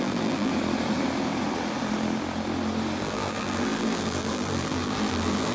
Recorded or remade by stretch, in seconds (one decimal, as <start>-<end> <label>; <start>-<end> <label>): 0.0-0.5 remade; 0.5-3.0 recorded; 3.0-5.5 remade